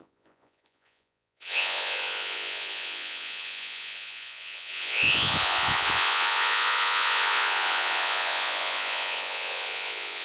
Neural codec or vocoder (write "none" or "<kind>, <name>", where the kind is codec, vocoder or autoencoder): vocoder, Vocos